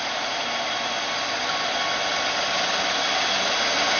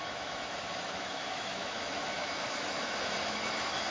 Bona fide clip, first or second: first